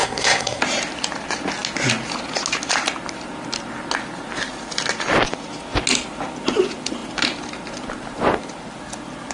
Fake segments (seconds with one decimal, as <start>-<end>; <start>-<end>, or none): 0.0-0.6